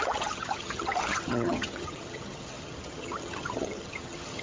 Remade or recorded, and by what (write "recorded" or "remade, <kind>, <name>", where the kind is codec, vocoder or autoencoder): remade, vocoder, HiFi-GAN